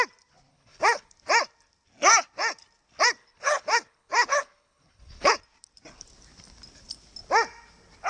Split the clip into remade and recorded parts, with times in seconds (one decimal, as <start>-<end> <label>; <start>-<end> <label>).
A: 0.0-0.5 recorded; 0.5-1.1 remade; 1.1-3.2 recorded; 3.2-5.3 remade; 5.3-8.1 recorded